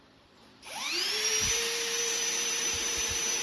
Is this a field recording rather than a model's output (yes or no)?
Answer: no